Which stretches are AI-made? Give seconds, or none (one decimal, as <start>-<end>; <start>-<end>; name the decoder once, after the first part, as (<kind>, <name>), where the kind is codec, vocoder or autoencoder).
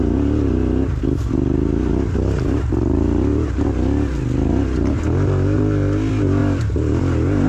none